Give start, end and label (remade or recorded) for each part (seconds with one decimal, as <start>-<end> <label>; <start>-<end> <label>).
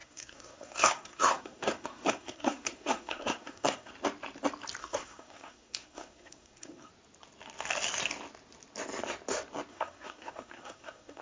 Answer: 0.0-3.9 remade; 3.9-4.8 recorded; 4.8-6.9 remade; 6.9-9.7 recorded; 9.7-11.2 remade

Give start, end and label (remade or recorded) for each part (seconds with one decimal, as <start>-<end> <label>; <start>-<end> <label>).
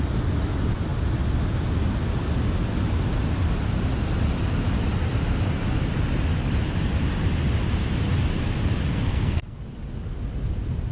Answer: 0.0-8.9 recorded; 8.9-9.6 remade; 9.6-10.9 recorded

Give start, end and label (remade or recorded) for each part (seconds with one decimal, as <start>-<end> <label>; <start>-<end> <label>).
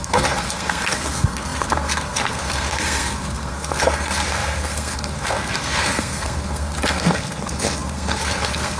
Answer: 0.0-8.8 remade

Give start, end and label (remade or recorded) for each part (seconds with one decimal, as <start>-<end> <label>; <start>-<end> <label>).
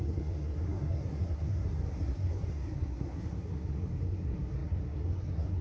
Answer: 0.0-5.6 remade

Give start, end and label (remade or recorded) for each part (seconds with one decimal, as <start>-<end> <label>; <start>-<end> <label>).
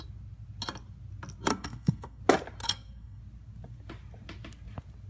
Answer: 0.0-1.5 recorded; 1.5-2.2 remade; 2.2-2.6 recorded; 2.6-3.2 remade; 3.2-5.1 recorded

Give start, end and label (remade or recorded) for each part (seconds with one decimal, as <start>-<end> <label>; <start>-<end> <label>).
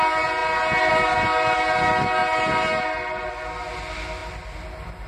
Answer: 0.0-5.1 recorded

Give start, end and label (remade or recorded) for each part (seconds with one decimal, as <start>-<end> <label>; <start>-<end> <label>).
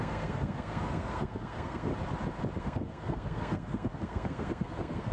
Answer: 0.0-1.9 remade; 1.9-2.6 recorded; 2.6-5.1 remade